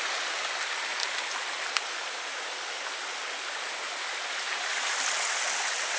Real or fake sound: real